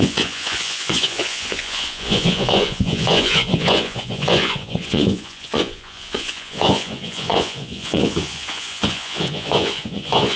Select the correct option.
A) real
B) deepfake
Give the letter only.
B